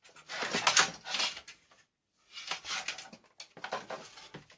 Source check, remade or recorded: recorded